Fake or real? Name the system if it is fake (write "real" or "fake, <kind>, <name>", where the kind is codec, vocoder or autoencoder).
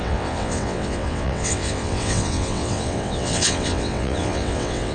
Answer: fake, vocoder, WaveNeXt